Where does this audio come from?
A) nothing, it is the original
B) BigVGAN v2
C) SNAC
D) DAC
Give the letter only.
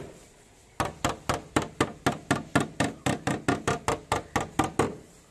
A